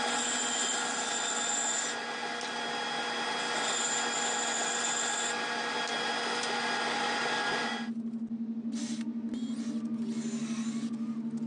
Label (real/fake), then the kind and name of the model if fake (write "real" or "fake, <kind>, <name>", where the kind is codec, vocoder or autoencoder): real